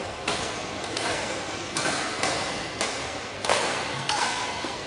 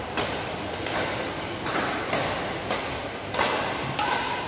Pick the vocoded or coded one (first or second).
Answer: first